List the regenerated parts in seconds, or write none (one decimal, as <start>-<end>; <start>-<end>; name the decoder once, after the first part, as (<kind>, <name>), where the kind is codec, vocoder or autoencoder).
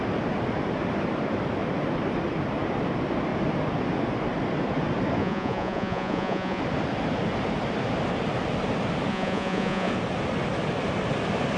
5.2-6.6 (vocoder, Vocos); 9.1-9.9